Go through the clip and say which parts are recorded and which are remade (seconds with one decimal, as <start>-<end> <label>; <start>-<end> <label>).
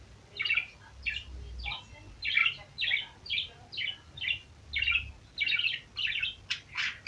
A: 0.0-7.1 recorded